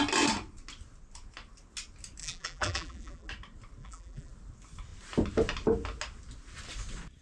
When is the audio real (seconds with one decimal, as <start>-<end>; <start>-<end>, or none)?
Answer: 0.0-2.2; 3.3-3.8; 4.3-7.2